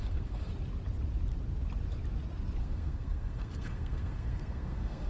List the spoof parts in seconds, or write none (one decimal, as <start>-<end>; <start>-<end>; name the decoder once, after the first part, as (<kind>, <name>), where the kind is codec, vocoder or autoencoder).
0.0-0.5 (codec, SNAC); 2.6-5.1

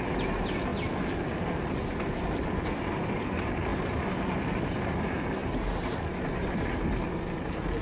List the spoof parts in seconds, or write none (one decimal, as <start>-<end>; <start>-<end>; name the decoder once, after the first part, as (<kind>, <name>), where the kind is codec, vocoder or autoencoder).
0.0-0.7 (vocoder, BigVGAN v2); 2.4-3.7; 4.4-5.4

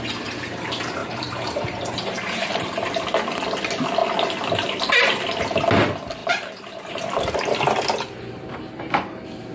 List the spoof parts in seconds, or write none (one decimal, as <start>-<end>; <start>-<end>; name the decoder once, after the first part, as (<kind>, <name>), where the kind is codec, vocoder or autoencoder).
1.0-2.9 (vocoder, BigVGAN v2); 6.2-6.9